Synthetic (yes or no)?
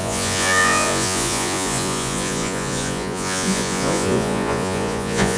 yes